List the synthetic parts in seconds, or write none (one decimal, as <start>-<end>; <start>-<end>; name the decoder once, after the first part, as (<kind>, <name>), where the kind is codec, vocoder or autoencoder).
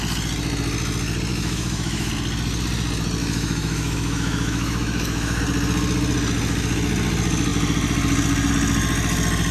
1.3-2.1 (autoencoder, DAC-VAE); 3.2-5.4